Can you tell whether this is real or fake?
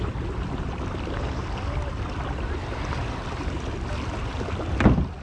real